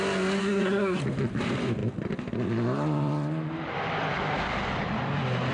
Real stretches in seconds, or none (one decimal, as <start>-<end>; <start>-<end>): 0.0-0.4; 1.0-5.5